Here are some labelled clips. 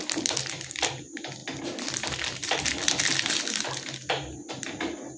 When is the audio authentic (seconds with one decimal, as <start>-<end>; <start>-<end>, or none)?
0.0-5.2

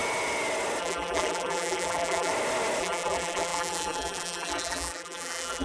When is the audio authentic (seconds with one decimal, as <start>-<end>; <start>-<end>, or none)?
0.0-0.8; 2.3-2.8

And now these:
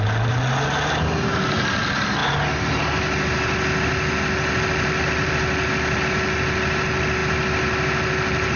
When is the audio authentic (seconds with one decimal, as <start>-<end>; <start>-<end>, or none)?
0.0-8.6

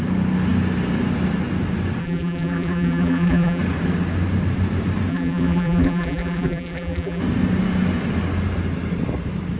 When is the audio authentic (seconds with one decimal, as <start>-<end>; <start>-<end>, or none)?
0.0-2.0; 3.6-5.1; 7.2-9.6